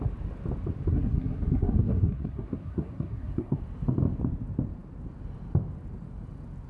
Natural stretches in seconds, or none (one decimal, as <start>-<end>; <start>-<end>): 0.0-0.9; 3.6-6.7